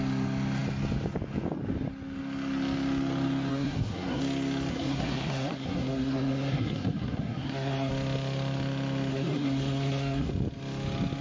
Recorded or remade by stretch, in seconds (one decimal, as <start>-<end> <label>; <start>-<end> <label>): 0.0-3.5 recorded; 3.5-4.2 remade; 4.2-4.7 recorded; 4.7-7.9 remade; 7.9-9.1 recorded; 9.1-10.3 remade; 10.3-11.2 recorded

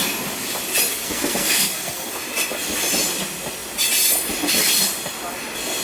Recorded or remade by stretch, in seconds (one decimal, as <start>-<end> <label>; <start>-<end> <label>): 0.0-0.9 recorded; 0.9-2.1 remade; 2.1-5.8 recorded

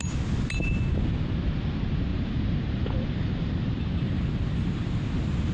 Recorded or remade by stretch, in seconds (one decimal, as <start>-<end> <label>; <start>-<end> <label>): 0.0-2.1 recorded; 2.1-4.2 remade; 4.2-5.5 recorded

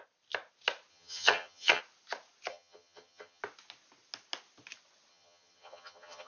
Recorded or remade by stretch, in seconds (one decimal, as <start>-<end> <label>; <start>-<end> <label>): 0.0-0.9 recorded; 0.9-1.8 remade; 1.8-2.5 recorded; 2.5-3.4 remade; 3.4-5.1 recorded; 5.1-6.3 remade

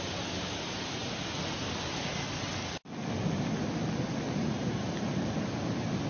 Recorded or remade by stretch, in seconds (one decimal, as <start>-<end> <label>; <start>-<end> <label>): 0.0-6.1 recorded

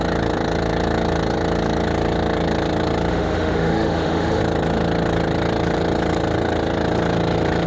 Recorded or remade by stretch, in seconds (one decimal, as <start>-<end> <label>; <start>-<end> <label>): 0.0-3.1 recorded; 3.1-4.4 remade; 4.4-7.7 recorded

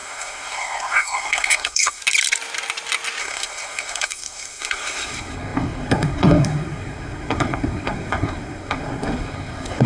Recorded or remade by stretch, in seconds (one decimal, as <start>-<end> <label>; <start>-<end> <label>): 0.0-2.0 remade; 2.0-3.2 recorded; 3.2-9.9 remade

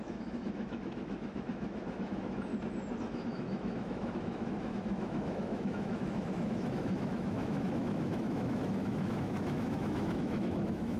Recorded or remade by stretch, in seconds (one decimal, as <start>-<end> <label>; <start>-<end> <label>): 0.0-2.5 remade; 2.5-3.0 recorded; 3.0-11.0 remade